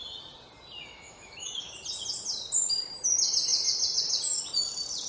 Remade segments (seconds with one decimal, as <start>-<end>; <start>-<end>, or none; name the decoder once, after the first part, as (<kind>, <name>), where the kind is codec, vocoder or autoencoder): 0.9-1.7 (autoencoder, DAC-VAE)